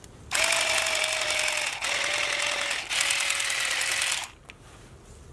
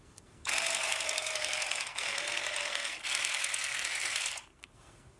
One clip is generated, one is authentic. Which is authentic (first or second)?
first